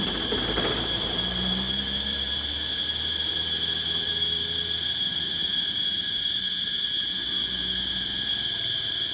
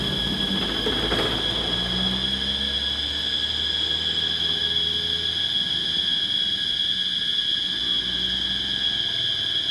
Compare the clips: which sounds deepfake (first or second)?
first